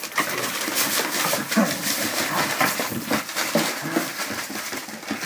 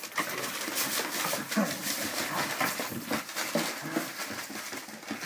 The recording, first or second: second